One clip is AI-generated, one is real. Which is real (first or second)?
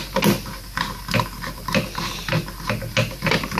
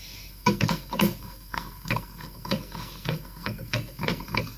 first